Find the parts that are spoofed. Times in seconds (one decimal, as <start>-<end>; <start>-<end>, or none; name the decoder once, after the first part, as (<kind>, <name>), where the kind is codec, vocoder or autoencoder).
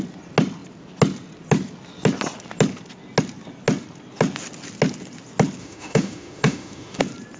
5.6-7.0 (autoencoder, DAC-VAE)